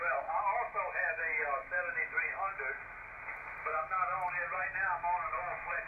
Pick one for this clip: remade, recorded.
recorded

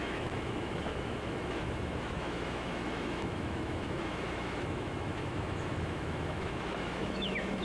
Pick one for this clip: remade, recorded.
remade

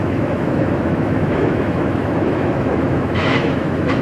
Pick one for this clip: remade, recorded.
remade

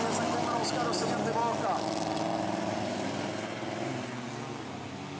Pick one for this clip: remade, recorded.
recorded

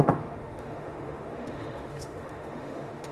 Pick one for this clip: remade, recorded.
remade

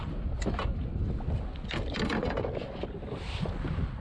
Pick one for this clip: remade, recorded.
recorded